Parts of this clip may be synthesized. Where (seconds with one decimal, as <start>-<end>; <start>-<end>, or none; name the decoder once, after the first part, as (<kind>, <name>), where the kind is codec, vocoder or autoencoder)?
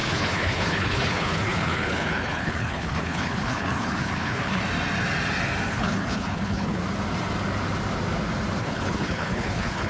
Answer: 0.0-4.6 (codec, HILCodec); 5.7-6.8; 8.6-9.9